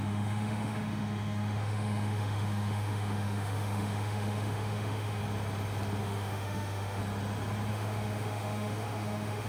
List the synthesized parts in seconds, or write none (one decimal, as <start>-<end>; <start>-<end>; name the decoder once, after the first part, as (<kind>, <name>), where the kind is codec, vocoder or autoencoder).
0.0-5.2 (autoencoder, DAC-VAE); 6.0-7.0; 7.7-9.5